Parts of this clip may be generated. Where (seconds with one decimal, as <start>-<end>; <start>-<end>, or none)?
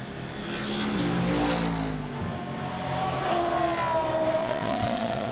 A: 4.4-5.3